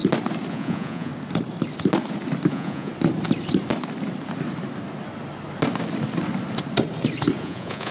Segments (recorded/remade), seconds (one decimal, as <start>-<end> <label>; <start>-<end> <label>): 0.0-0.5 recorded; 0.5-1.1 remade; 1.1-2.5 recorded; 2.5-2.9 remade; 2.9-7.4 recorded; 7.4-7.9 remade